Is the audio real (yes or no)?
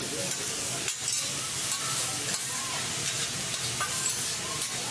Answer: yes